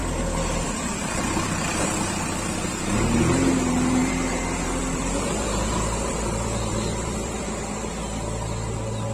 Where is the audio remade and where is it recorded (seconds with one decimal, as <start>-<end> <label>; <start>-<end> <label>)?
0.0-3.2 remade; 3.2-4.0 recorded; 4.0-7.9 remade; 7.9-9.1 recorded